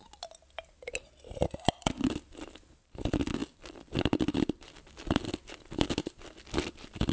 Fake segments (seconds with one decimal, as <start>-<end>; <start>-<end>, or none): 3.4-5.5